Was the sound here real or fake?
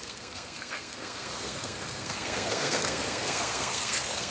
fake